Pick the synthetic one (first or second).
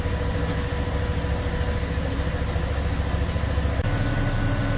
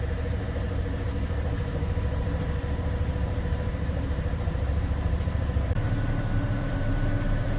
second